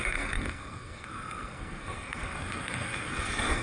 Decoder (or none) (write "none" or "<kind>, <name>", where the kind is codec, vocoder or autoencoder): codec, SNAC